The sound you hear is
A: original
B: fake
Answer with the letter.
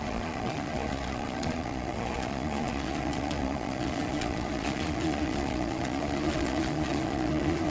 B